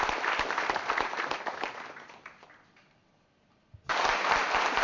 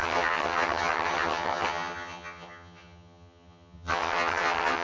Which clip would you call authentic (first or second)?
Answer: first